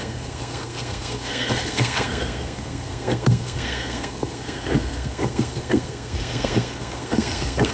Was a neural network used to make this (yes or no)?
yes